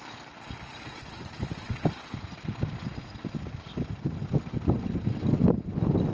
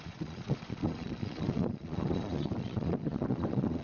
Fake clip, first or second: second